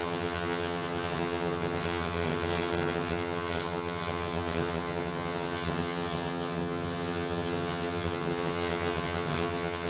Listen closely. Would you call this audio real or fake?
fake